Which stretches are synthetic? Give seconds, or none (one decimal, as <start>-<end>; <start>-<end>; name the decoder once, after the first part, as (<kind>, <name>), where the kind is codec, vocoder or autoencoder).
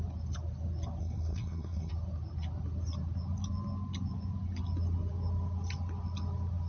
1.0-1.9 (codec, SNAC)